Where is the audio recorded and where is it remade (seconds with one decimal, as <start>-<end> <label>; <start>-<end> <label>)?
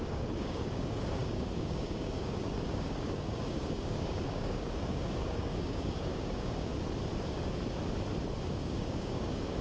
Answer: 0.0-6.7 remade; 6.7-8.5 recorded; 8.5-9.6 remade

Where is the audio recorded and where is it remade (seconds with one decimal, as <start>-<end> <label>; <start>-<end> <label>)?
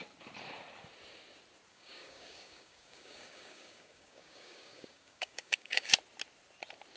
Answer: 0.0-1.7 recorded; 1.7-5.9 remade; 5.9-7.0 recorded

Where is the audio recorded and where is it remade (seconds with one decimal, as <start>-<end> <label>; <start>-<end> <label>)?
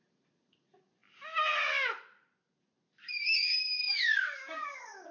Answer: 0.0-3.0 recorded; 3.0-5.1 remade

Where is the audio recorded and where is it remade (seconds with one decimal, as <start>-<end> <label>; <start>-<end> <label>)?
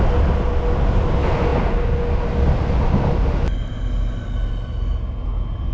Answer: 0.0-5.7 recorded